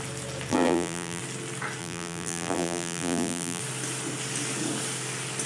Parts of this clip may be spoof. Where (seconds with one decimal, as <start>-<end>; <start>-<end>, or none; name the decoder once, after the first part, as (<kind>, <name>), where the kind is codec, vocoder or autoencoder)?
0.5-1.2 (vocoder, BigVGAN v2); 1.8-3.6